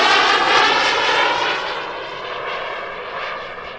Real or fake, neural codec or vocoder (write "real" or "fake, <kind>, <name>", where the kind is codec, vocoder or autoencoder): real